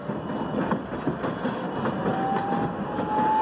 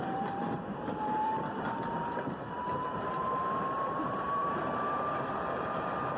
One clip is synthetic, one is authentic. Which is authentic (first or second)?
first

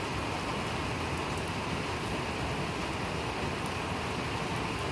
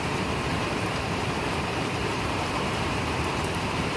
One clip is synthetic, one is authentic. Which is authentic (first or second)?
first